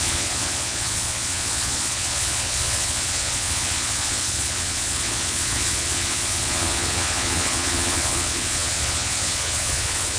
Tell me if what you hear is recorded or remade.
remade